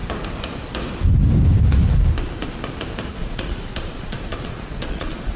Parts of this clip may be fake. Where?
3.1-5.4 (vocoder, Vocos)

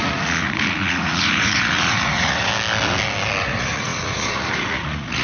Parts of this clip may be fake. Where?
0.0-2.5 (vocoder, Vocos); 3.4-5.2

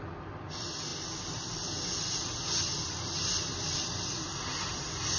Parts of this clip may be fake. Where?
none

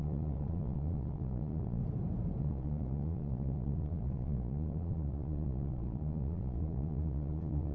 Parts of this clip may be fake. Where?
0.0-1.8 (vocoder, Vocos); 2.4-7.7

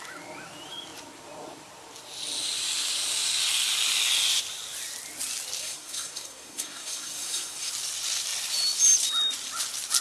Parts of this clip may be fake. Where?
5.6-7.7 (codec, SNAC)